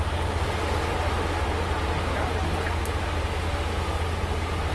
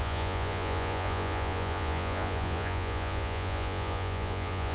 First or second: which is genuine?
first